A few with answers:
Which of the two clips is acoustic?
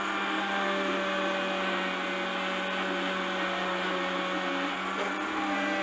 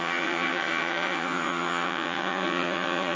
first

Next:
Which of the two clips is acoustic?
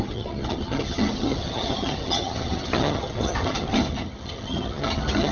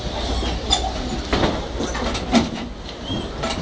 second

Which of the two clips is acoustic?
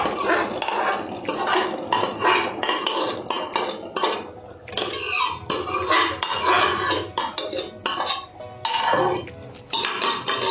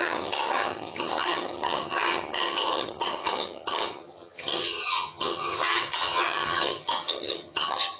first